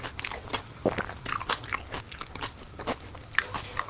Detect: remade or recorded remade